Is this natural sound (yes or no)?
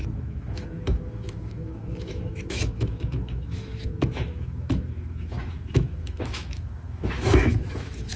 no